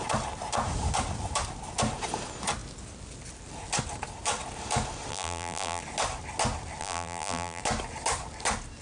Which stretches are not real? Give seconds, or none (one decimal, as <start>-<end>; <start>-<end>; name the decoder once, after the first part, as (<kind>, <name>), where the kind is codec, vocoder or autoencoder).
5.1-5.8 (vocoder, BigVGAN v2); 6.8-7.6